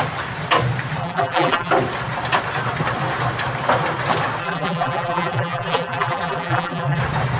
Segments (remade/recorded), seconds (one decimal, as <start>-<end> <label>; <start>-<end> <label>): 0.0-1.0 recorded; 1.0-1.7 remade; 1.7-4.4 recorded; 4.4-7.0 remade; 7.0-7.4 recorded